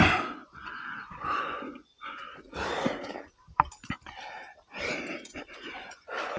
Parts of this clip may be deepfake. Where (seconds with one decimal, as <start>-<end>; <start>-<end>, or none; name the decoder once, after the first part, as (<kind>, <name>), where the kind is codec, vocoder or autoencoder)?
0.0-2.2 (vocoder, Vocos); 5.1-6.4